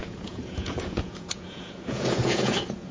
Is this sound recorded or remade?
remade